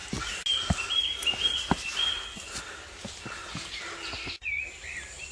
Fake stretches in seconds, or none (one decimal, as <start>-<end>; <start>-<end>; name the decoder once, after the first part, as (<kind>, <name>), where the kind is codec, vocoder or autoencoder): none